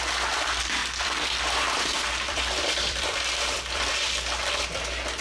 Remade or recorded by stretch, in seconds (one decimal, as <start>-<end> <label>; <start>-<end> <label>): 0.0-0.8 recorded; 0.8-3.9 remade; 3.9-5.2 recorded